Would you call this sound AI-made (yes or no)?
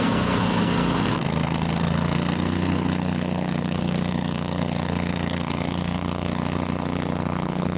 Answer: yes